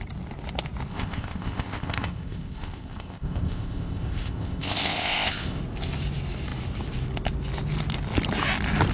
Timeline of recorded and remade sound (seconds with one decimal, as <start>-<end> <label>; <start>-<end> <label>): 0.0-0.9 recorded; 0.9-5.6 remade; 5.6-8.9 recorded